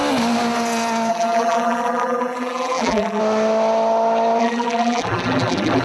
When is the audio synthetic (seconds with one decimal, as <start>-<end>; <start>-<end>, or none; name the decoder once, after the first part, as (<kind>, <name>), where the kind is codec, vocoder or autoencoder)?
1.1-3.2 (vocoder, BigVGAN v2); 4.4-5.8